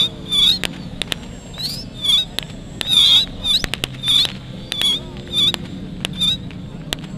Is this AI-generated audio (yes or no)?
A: no